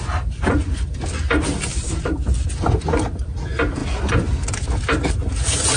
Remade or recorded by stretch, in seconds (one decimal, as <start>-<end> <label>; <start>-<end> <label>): 0.0-1.7 recorded; 1.7-2.8 remade; 2.8-3.8 recorded; 3.8-5.1 remade; 5.1-5.8 recorded